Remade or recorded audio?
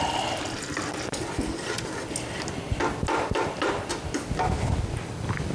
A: recorded